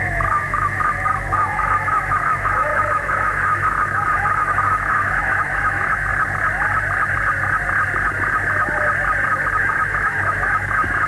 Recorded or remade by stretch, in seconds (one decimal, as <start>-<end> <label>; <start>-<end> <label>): 0.0-6.1 remade; 6.1-9.6 recorded; 9.6-11.1 remade